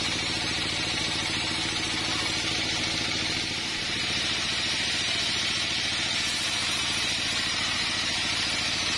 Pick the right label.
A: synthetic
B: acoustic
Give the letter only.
A